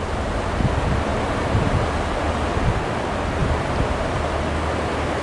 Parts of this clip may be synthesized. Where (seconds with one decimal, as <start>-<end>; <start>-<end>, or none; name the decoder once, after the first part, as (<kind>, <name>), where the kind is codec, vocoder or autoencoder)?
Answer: 3.4-4.1 (vocoder, BigVGAN v2)